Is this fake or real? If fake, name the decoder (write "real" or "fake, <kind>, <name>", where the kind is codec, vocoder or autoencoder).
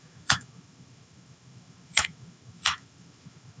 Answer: fake, autoencoder, DAC-VAE